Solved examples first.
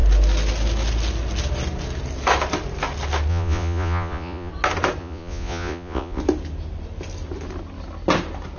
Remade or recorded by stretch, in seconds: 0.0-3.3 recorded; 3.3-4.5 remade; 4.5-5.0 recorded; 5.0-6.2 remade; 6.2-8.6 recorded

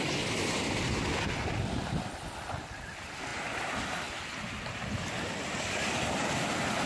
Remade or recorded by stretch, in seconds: 0.0-6.9 recorded

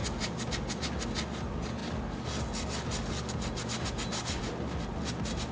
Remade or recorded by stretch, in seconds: 0.0-5.5 recorded